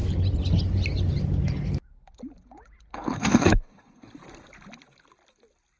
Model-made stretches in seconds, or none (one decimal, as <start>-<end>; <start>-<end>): 2.9-4.1